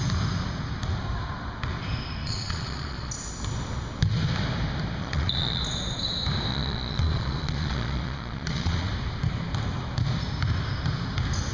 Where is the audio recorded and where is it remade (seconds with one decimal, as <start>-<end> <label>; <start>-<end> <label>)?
0.0-2.2 recorded; 2.2-3.1 remade; 3.1-5.0 recorded; 5.0-5.6 remade; 5.6-6.5 recorded; 6.5-8.9 remade; 8.9-11.5 recorded